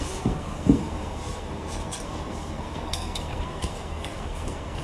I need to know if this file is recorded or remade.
remade